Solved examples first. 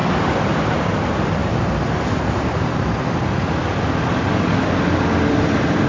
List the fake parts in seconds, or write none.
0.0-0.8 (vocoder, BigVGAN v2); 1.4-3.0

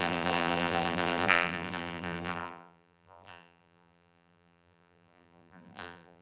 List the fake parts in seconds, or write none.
0.0-6.2 (vocoder, BigVGAN v2)

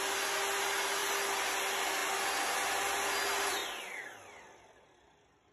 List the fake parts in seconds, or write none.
none

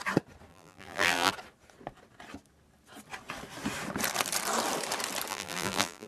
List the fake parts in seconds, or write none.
0.5-1.3 (vocoder, BigVGAN v2); 5.3-6.1

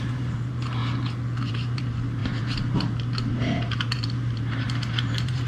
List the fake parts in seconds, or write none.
0.0-0.8 (vocoder, BigVGAN v2); 1.5-5.5

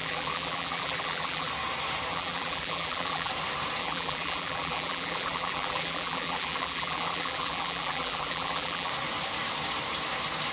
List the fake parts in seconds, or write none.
0.0-1.5 (vocoder, BigVGAN v2); 2.1-3.3; 3.8-8.9

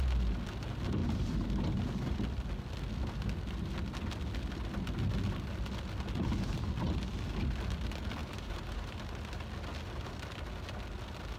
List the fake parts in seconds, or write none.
8.2-8.9 (vocoder, BigVGAN v2)